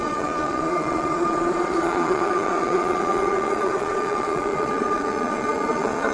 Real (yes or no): no